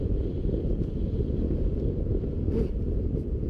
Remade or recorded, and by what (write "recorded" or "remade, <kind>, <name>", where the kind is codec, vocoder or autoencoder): remade, vocoder, BigVGAN v2